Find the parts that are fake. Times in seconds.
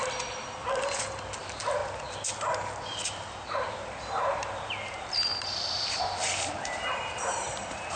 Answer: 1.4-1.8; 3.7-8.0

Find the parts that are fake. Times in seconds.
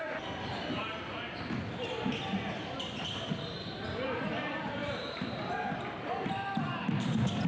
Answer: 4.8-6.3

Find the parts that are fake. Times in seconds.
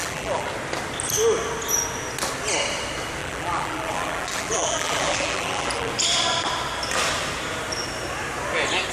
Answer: 0.0-0.5; 3.2-5.9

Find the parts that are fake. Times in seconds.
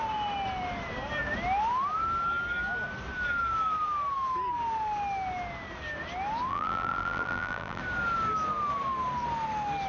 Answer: 6.5-7.8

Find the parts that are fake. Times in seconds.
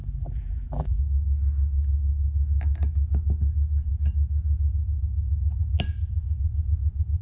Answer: 0.0-1.0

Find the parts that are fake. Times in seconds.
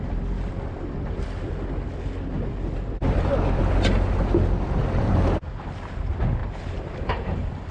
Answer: 6.4-7.7